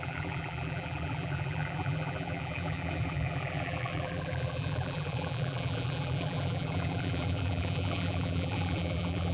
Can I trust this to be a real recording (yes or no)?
no